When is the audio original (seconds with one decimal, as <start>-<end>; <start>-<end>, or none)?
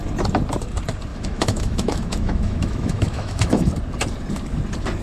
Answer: 0.0-1.1; 3.7-5.0